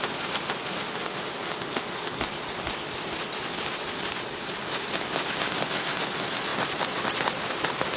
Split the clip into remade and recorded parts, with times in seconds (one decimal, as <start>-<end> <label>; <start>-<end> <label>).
0.0-6.5 recorded; 6.5-7.5 remade; 7.5-8.0 recorded